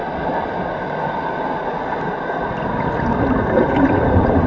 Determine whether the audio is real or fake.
real